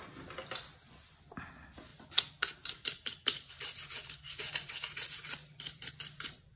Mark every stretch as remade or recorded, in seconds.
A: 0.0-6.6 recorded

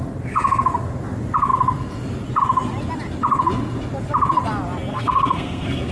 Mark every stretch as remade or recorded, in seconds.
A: 0.0-4.9 recorded; 4.9-5.9 remade

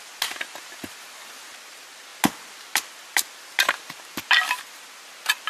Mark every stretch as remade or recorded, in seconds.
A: 0.0-5.5 recorded

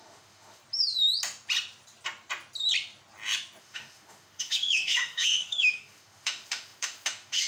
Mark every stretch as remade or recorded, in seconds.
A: 0.0-0.6 remade; 0.6-3.6 recorded; 3.6-7.5 remade

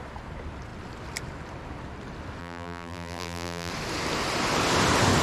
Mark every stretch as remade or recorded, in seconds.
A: 0.0-2.4 recorded; 2.4-3.7 remade; 3.7-5.2 recorded

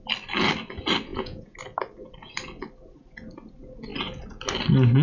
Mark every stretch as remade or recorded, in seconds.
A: 0.0-1.1 recorded; 1.1-1.6 remade; 1.6-5.0 recorded

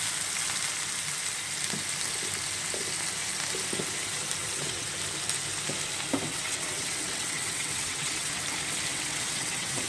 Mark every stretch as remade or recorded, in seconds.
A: 0.0-4.4 recorded; 4.4-4.9 remade; 4.9-6.3 recorded; 6.3-8.4 remade; 8.4-8.9 recorded; 8.9-9.9 remade